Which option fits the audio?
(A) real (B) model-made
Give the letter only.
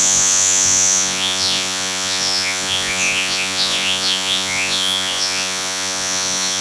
B